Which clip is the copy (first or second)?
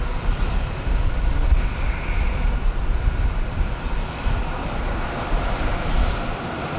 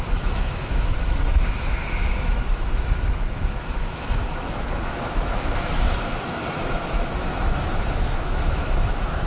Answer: second